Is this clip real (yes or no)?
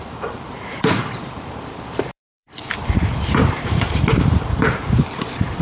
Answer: no